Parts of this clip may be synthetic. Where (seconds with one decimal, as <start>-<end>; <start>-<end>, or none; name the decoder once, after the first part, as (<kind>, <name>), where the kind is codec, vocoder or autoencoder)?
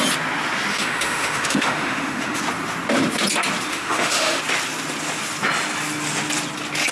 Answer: 0.7-2.4 (autoencoder, DAC-VAE); 3.7-4.4